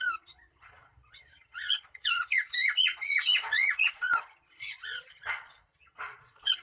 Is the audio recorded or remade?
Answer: remade